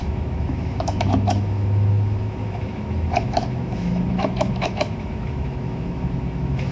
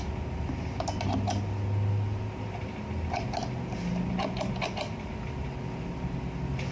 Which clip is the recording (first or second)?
second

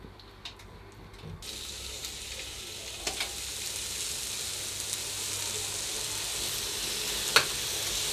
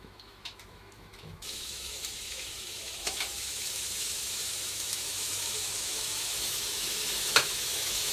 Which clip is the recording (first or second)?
first